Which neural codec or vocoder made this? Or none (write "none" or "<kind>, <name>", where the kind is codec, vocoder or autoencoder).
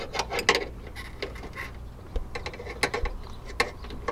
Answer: none